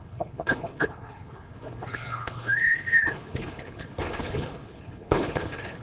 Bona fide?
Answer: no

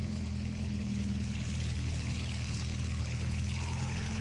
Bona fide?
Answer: no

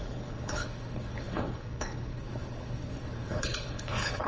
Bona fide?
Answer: no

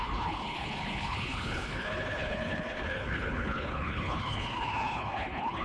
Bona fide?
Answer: no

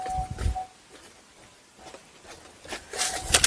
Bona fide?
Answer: yes